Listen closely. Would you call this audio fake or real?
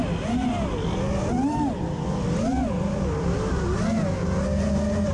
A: real